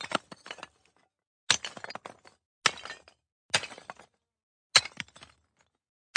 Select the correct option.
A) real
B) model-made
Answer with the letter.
A